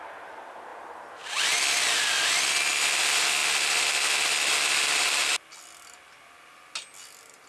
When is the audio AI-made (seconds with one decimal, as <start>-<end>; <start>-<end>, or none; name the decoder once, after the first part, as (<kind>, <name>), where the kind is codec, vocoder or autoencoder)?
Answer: 0.7-1.3 (vocoder, BigVGAN v2)